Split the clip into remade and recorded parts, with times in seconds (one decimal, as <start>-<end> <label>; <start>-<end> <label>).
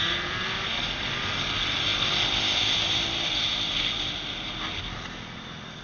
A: 0.0-5.8 recorded